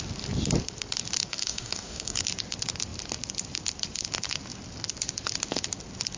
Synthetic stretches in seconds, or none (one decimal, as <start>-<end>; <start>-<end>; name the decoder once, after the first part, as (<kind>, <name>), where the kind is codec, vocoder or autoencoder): 1.3-2.2 (codec, DAC)